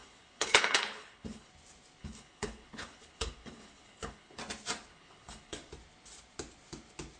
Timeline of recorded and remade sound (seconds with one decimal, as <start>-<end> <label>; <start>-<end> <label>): 0.0-1.5 remade; 1.5-2.0 recorded; 2.0-4.4 remade; 4.4-4.9 recorded; 4.9-5.7 remade; 5.7-7.2 recorded